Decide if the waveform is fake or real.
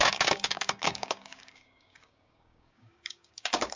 fake